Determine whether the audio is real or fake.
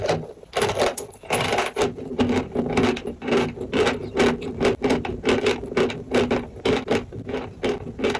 real